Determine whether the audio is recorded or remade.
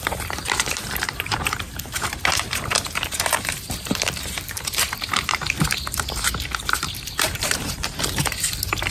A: remade